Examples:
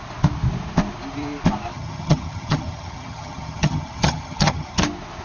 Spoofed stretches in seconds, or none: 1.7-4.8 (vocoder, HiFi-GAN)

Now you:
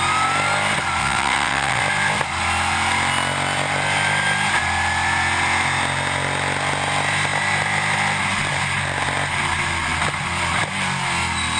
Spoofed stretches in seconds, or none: 1.0-1.8 (vocoder, WaveNeXt)

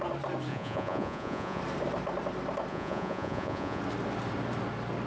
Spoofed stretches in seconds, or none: 0.5-1.6 (vocoder, Vocos); 2.7-3.8

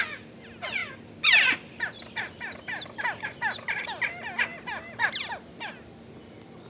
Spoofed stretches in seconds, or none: none